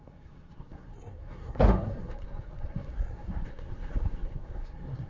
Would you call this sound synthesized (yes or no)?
yes